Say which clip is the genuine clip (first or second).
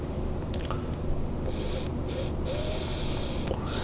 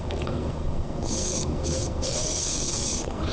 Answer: first